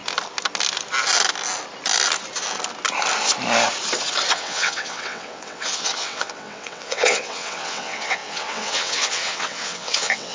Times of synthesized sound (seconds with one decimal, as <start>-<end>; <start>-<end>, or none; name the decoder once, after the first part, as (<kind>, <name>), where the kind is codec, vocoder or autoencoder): 4.3-10.3 (vocoder, WaveNeXt)